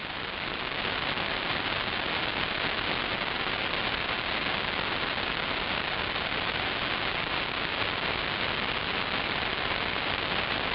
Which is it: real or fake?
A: real